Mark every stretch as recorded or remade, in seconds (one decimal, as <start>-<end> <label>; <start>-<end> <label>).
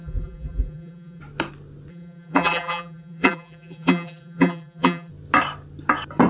0.0-1.2 remade; 1.2-1.9 recorded; 1.9-5.1 remade; 5.1-6.3 recorded